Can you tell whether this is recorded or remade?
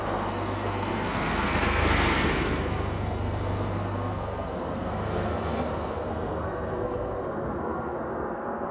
remade